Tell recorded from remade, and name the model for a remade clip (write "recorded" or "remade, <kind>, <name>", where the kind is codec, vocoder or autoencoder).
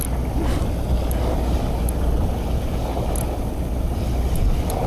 recorded